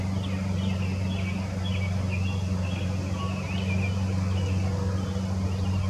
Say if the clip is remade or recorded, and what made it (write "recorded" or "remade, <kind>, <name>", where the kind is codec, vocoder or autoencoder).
recorded